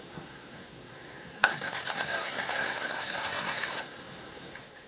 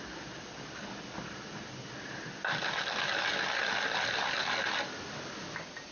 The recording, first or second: second